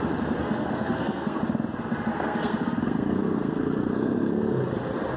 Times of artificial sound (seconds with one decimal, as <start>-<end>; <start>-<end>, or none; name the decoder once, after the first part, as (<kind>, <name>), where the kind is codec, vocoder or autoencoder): 0.4-1.4 (codec, SNAC); 2.1-4.7